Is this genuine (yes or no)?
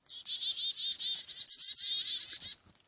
yes